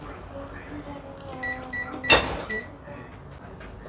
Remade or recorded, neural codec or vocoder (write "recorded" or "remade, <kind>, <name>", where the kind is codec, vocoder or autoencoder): recorded